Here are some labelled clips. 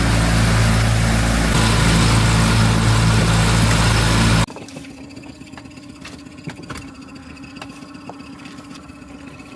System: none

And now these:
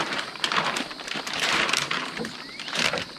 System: vocoder, BigVGAN v2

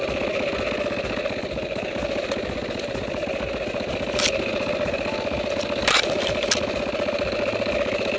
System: none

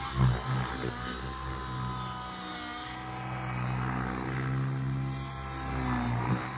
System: none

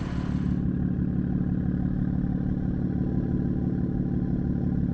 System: none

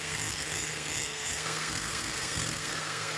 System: codec, SNAC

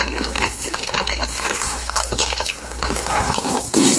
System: codec, SNAC